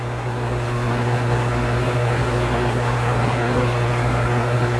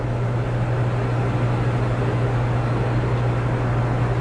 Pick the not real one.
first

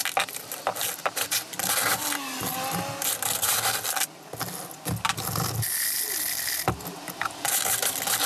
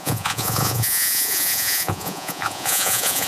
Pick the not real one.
second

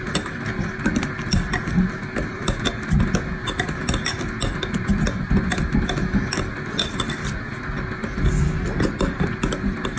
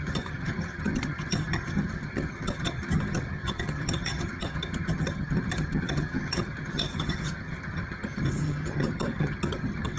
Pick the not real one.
second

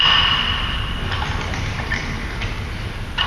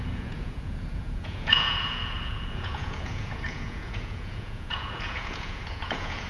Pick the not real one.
second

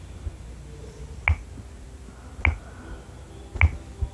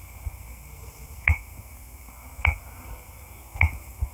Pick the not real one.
second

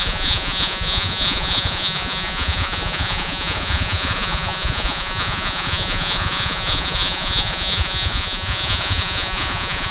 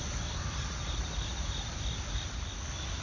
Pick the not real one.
first